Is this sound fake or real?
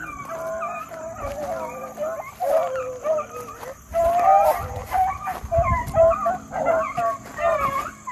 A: real